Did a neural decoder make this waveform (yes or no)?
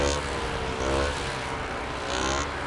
no